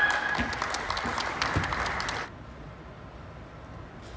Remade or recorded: recorded